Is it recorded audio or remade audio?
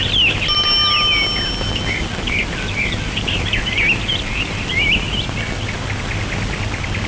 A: recorded